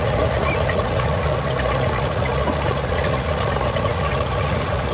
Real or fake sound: fake